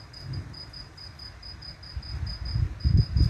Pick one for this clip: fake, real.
real